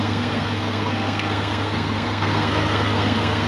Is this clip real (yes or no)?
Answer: no